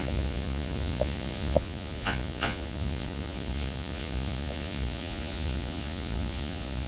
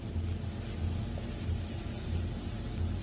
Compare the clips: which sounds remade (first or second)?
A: first